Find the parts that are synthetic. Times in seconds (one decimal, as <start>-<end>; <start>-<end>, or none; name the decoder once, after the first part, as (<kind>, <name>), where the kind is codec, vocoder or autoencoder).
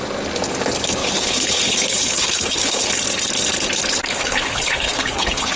1.0-2.9 (codec, HILCodec); 4.1-5.6